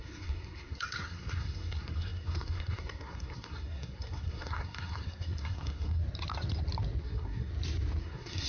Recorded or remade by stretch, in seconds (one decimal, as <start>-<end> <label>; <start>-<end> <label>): 0.0-6.0 remade; 6.0-7.0 recorded; 7.0-7.5 remade; 7.5-8.0 recorded; 8.0-8.5 remade